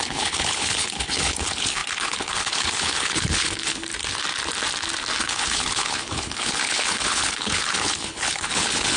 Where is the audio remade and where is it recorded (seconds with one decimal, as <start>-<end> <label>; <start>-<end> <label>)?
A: 0.0-3.9 remade; 3.9-5.2 recorded; 5.2-9.0 remade